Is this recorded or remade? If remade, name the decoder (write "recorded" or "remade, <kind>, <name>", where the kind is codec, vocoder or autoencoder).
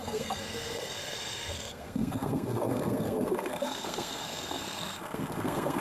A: remade, codec, SNAC